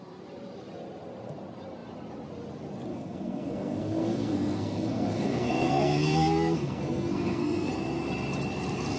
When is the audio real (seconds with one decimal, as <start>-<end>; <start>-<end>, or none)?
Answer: 0.0-2.9; 7.7-9.0